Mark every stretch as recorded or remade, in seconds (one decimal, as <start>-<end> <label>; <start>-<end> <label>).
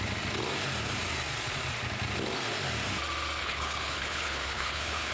0.0-3.4 recorded; 3.4-5.1 remade